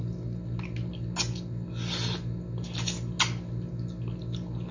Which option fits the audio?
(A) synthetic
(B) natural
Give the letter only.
B